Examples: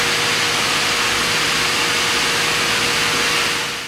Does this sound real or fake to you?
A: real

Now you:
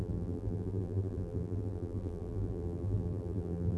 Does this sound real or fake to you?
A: fake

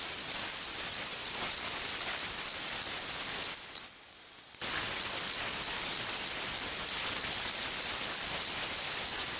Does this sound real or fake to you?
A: real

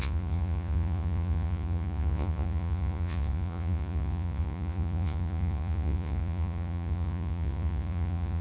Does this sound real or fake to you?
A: fake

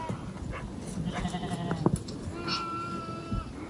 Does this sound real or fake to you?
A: real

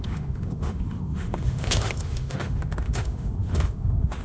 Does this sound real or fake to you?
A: fake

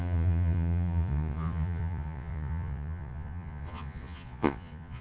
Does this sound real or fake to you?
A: fake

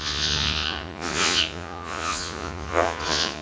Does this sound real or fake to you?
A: fake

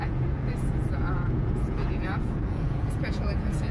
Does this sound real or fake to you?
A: fake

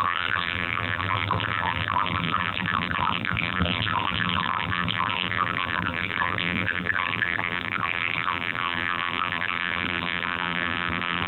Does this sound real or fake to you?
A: fake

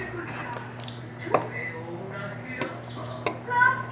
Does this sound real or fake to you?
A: real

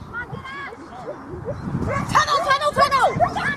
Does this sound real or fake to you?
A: fake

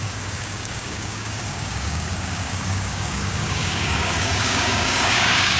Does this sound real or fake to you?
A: fake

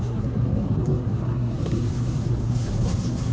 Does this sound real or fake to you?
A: fake